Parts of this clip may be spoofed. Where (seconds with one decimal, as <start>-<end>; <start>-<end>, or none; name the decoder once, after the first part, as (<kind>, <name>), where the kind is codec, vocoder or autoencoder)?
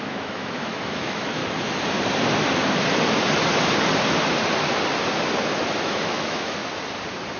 0.0-1.4 (autoencoder, DAC-VAE); 5.8-6.6